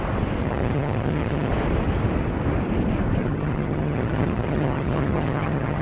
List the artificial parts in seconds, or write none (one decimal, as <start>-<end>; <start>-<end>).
0.4-1.5; 3.2-5.8